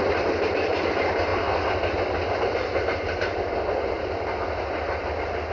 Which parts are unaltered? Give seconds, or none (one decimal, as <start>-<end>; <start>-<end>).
0.0-5.5